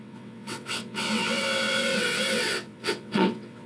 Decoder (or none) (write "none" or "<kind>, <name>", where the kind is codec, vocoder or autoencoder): vocoder, WaveNeXt